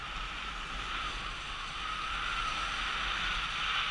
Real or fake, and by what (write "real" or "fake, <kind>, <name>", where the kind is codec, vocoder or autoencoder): real